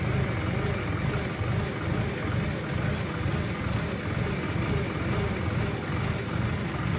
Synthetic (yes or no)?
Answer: no